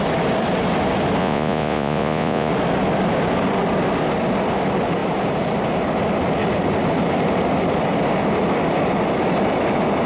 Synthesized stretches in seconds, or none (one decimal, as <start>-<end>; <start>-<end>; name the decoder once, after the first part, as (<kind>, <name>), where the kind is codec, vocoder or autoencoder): 1.2-2.5 (vocoder, Vocos)

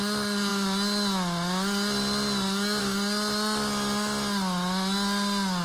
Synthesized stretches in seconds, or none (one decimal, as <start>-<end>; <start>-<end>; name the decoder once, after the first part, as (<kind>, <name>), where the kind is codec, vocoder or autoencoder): none

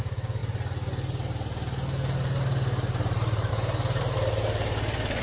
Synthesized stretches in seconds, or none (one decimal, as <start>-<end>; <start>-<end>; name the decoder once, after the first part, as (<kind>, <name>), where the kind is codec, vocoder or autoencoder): none

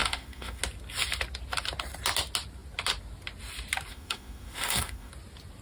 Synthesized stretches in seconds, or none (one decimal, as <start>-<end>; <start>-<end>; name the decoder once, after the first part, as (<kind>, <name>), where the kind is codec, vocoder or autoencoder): 0.0-0.6 (autoencoder, DAC-VAE); 3.9-5.1

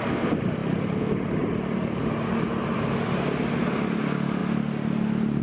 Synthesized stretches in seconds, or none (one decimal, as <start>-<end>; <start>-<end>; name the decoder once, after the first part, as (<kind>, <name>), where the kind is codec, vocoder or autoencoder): none

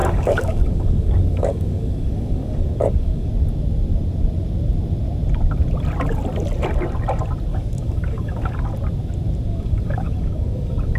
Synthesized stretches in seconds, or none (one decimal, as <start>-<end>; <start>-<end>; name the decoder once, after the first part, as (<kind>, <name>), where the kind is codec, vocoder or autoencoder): 0.0-3.3 (codec, DAC); 7.5-8.7; 9.5-11.0